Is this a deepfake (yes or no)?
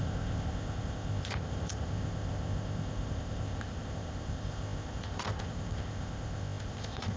yes